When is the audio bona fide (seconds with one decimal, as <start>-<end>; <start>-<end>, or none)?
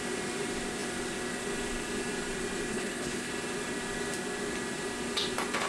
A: 0.0-2.7; 3.3-5.7